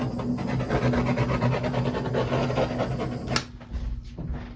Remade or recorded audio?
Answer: recorded